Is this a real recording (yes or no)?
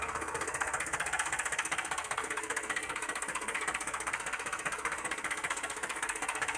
no